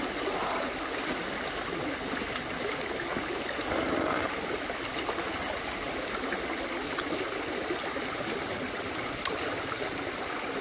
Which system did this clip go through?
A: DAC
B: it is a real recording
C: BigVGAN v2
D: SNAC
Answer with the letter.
B